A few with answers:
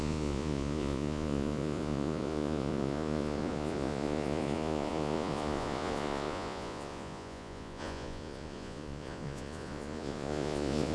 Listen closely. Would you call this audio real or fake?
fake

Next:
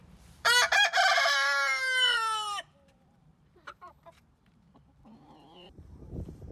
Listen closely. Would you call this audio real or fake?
fake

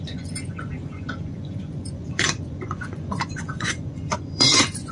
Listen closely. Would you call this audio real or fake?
fake